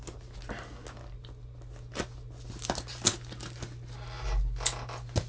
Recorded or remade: recorded